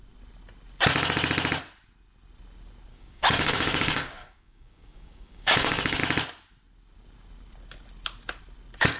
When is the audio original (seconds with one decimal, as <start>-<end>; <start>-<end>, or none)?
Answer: 0.0-2.9; 6.0-9.0